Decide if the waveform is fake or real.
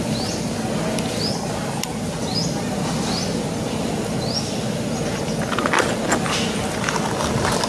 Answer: real